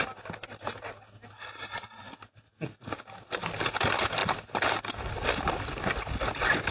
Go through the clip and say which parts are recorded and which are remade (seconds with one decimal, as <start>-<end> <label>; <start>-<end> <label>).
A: 0.0-1.6 recorded; 1.6-2.4 remade; 2.4-6.7 recorded